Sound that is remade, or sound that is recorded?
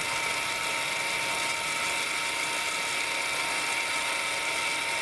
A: recorded